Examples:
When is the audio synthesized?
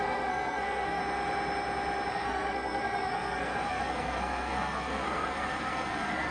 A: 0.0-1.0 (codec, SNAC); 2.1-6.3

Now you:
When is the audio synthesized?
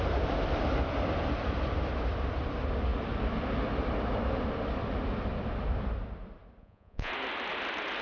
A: 6.6-7.1 (vocoder, Vocos)